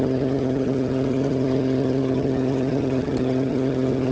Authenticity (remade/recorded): remade